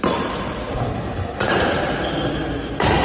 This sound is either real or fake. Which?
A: real